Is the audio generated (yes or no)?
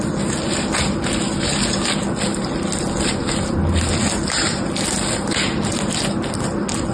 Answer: no